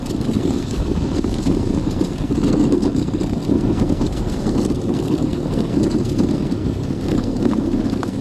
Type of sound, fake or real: fake